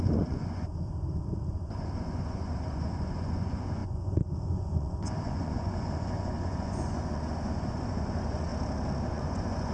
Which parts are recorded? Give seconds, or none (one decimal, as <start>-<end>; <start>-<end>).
0.9-1.5; 8.5-9.1